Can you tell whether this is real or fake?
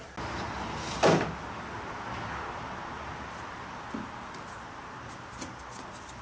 real